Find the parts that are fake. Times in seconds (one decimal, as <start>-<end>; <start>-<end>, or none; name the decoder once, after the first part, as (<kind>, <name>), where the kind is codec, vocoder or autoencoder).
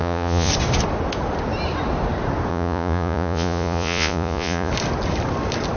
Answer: 0.0-0.5 (vocoder, Vocos); 2.5-4.7